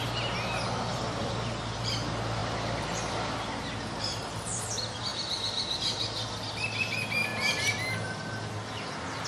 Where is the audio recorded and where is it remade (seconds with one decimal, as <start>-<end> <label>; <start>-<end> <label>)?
0.0-9.3 recorded